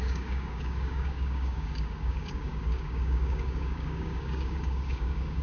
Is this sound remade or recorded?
remade